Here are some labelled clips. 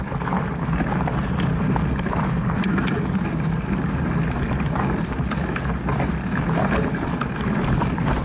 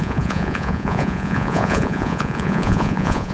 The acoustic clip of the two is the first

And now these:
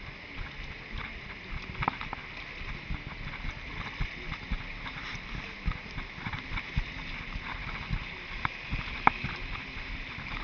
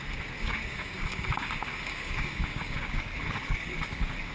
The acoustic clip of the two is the first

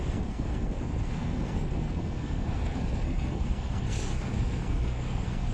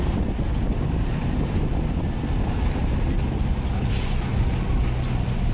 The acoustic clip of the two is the second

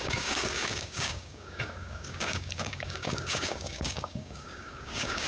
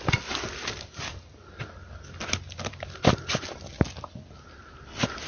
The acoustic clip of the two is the second